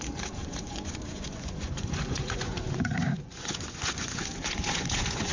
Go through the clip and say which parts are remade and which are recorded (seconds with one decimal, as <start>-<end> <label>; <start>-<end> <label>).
0.0-5.3 remade